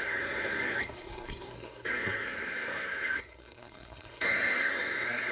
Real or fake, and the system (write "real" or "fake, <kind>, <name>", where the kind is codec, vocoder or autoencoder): fake, codec, SNAC